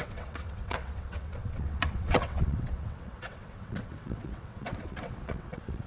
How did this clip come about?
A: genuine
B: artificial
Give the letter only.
B